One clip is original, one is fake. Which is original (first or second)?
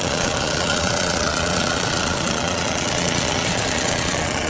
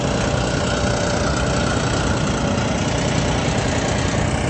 second